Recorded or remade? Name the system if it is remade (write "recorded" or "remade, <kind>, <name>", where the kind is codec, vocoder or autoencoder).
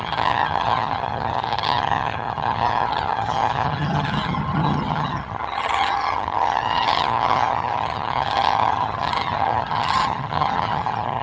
remade, vocoder, HiFi-GAN